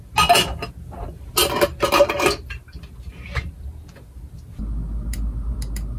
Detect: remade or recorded recorded